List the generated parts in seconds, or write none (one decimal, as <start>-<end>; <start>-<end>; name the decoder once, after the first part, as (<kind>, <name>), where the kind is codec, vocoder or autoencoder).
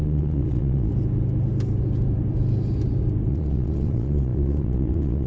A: 0.0-0.9 (vocoder, Vocos); 3.3-5.3